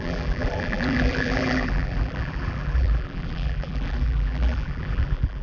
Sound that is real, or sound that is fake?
fake